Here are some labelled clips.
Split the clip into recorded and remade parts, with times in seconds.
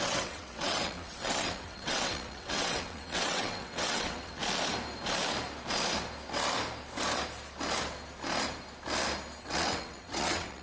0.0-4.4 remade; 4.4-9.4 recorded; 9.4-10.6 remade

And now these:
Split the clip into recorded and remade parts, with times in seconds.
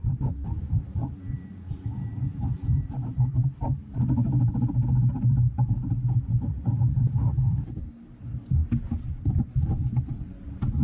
0.0-4.7 remade; 4.7-10.8 recorded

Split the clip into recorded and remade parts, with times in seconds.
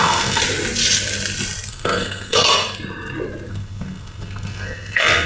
0.0-0.4 remade; 0.4-1.7 recorded; 1.7-2.5 remade; 2.5-3.5 recorded; 3.5-5.3 remade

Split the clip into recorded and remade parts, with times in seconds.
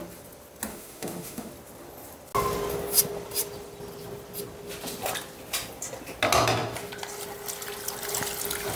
0.0-0.7 recorded; 0.7-1.5 remade; 1.5-8.8 recorded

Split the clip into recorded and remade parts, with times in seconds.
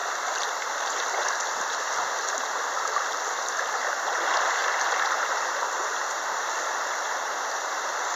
0.0-8.2 recorded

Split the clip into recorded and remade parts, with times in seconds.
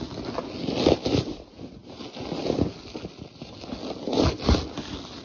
0.0-5.2 recorded